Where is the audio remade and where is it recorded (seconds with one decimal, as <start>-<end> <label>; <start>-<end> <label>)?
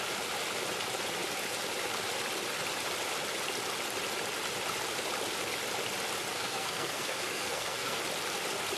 0.0-6.3 recorded; 6.3-8.0 remade; 8.0-8.8 recorded